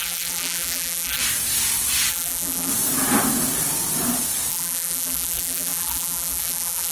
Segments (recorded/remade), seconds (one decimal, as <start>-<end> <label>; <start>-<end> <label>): 0.0-1.2 remade; 1.2-2.1 recorded; 2.1-2.7 remade; 2.7-4.5 recorded; 4.5-6.9 remade